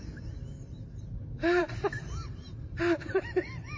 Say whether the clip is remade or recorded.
remade